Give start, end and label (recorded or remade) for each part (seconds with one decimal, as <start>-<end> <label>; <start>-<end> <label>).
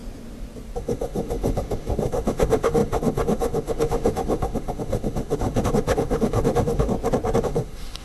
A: 0.0-0.8 recorded; 0.8-6.9 remade; 6.9-7.4 recorded; 7.4-8.0 remade